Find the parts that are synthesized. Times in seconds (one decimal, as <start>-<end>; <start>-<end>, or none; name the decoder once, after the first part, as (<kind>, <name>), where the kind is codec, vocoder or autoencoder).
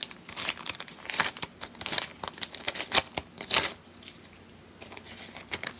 none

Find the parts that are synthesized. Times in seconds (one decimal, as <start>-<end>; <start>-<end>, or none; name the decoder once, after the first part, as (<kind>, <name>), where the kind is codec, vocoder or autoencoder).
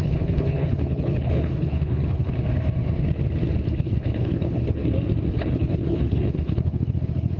0.0-2.3 (codec, HILCodec); 3.7-4.8; 5.3-7.4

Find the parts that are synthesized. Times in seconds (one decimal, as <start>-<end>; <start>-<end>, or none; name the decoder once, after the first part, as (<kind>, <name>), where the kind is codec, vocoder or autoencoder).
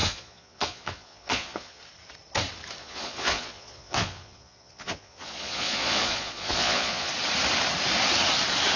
0.0-1.8 (vocoder, Vocos); 2.8-7.1